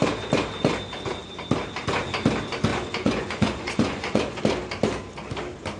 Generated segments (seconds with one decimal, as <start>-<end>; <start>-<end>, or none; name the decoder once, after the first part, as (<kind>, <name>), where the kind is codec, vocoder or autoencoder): 2.7-4.4 (vocoder, Vocos)